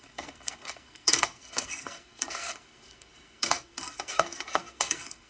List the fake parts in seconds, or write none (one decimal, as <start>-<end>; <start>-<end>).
0.0-5.3